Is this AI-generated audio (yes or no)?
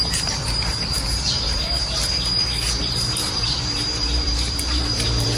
yes